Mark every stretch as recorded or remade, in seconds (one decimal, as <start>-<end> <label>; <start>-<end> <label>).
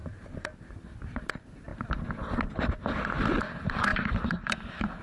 0.0-0.8 remade; 0.8-3.9 recorded; 3.9-4.5 remade; 4.5-5.0 recorded